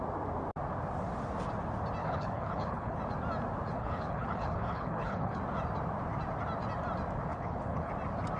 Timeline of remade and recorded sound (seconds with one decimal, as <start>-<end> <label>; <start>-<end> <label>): 0.0-2.0 recorded; 2.0-3.0 remade; 3.0-3.7 recorded; 3.7-5.4 remade; 5.4-7.3 recorded; 7.3-7.9 remade; 7.9-8.4 recorded